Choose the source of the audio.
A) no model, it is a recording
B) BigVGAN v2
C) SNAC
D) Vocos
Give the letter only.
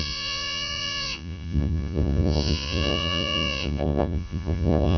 D